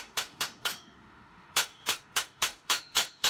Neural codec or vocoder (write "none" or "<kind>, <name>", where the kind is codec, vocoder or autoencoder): autoencoder, DAC-VAE